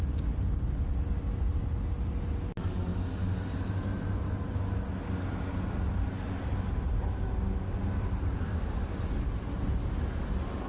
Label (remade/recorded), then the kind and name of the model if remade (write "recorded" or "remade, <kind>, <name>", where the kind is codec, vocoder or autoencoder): recorded